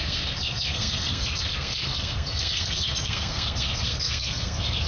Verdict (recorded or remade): remade